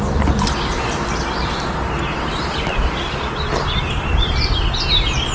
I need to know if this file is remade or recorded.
recorded